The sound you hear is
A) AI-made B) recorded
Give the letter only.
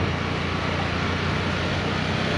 B